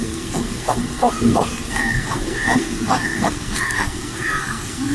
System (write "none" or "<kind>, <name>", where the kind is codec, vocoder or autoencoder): codec, SNAC